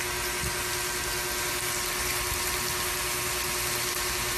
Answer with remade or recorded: recorded